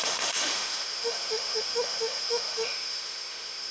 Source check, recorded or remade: remade